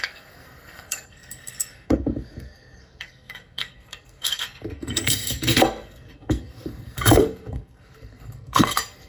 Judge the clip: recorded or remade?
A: remade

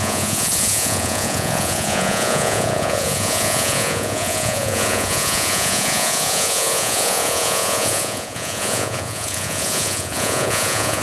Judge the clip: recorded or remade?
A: remade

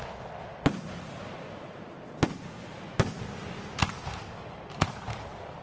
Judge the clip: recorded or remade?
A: recorded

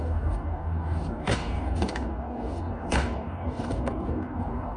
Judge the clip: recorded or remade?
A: remade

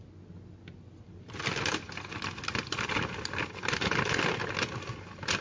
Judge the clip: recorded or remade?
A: recorded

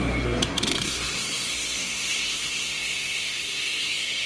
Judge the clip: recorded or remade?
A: remade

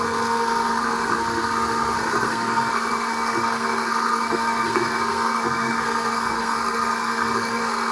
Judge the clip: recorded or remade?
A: remade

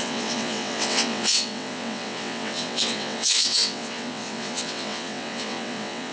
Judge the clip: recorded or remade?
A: remade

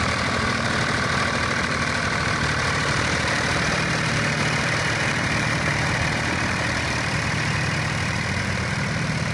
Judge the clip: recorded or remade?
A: remade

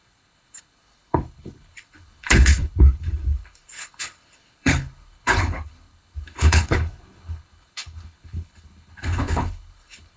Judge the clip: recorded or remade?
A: remade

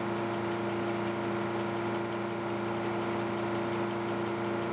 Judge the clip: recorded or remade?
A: recorded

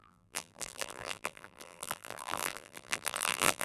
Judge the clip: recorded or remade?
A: remade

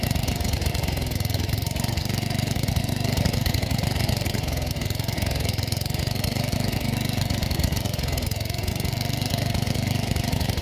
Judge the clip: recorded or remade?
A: remade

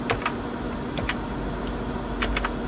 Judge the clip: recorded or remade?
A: recorded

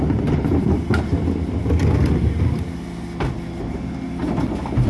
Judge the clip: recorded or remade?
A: recorded